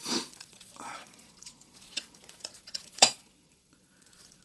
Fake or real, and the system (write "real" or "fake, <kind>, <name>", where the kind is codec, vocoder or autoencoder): fake, vocoder, Vocos